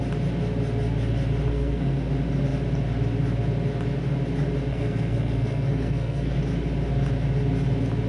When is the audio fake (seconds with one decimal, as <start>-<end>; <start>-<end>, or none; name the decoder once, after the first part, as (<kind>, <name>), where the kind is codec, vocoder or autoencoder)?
1.5-2.1 (codec, SNAC); 4.7-6.4